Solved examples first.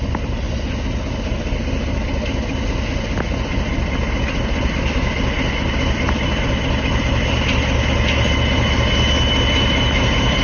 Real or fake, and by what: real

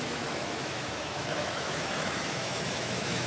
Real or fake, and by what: fake, autoencoder, DAC-VAE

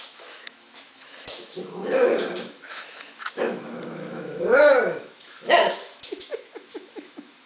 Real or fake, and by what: fake, autoencoder, DAC-VAE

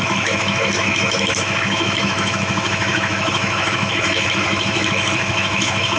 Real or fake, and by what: fake, autoencoder, DAC-VAE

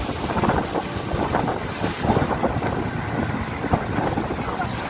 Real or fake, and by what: real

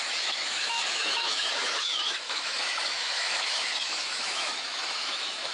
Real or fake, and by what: fake, autoencoder, DAC-VAE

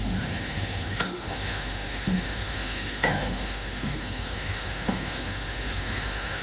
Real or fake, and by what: fake, autoencoder, DAC-VAE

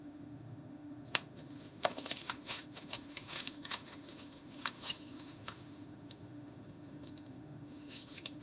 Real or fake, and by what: fake, autoencoder, DAC-VAE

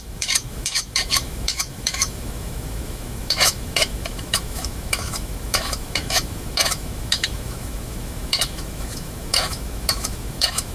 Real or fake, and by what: fake, autoencoder, DAC-VAE